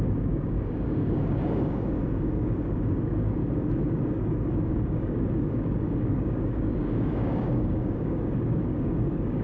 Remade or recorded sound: remade